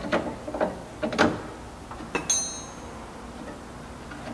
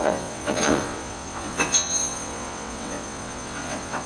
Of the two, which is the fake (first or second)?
second